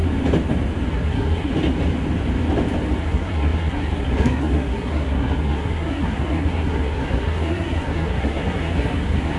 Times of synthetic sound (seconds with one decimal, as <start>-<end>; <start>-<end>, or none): 0.9-1.5; 3.0-9.4